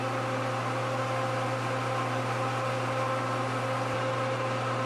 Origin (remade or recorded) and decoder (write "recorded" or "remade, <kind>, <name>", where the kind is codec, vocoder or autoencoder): recorded